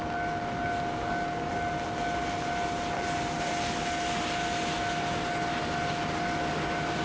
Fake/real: real